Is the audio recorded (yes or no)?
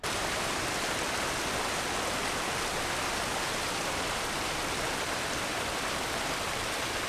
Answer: yes